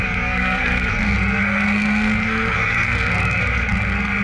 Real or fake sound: fake